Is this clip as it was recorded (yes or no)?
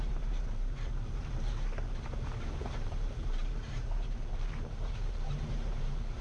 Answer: no